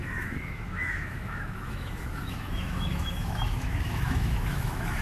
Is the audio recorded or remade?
remade